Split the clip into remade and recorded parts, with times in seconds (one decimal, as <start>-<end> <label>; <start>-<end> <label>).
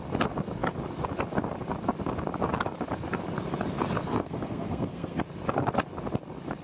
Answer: 0.0-4.1 recorded; 4.1-5.2 remade; 5.2-6.6 recorded